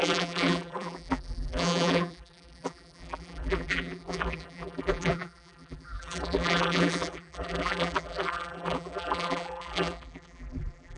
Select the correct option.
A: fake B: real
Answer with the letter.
A